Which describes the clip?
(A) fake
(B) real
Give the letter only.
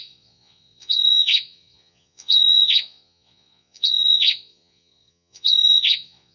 A